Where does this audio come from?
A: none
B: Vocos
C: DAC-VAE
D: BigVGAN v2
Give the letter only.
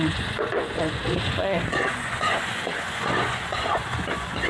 B